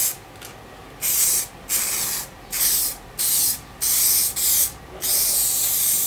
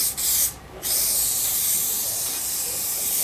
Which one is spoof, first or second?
second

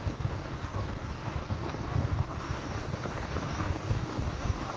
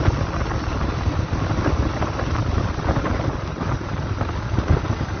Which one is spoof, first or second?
first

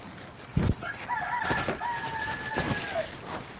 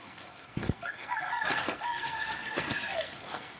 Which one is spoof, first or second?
second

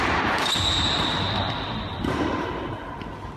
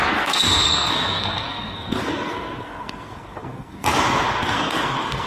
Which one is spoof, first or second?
second